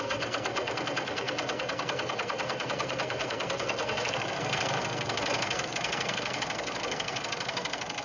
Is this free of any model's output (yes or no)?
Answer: no